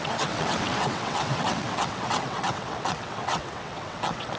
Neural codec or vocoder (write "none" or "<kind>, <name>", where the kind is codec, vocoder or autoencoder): vocoder, WaveNeXt